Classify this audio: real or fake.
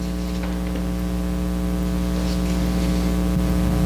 real